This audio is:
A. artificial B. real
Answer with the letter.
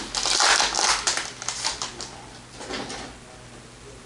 B